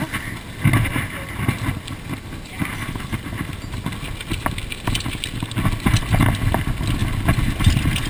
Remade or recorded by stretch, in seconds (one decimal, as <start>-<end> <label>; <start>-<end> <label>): 0.0-8.1 recorded